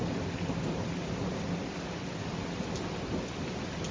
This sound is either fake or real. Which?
real